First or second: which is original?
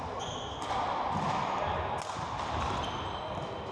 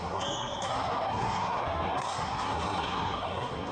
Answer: first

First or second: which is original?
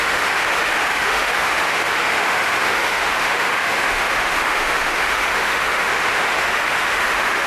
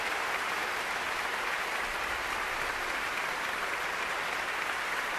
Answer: second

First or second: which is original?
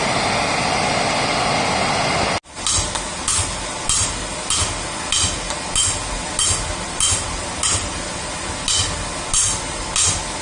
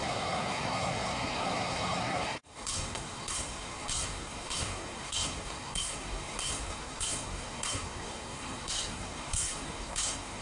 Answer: first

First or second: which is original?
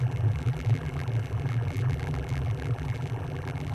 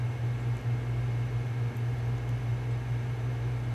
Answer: second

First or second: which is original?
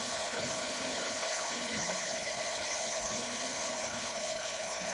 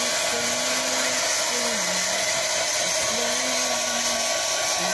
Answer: second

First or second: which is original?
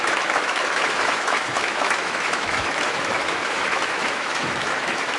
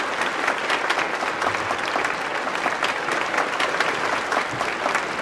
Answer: second